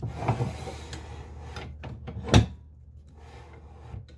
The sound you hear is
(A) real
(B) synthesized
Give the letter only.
A